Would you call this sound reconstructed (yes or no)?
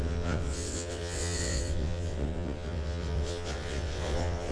yes